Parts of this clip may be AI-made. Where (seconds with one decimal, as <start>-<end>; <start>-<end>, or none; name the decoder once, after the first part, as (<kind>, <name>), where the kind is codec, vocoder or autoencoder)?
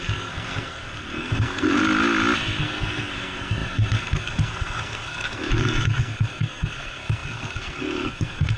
0.0-1.8 (codec, SNAC); 2.6-8.6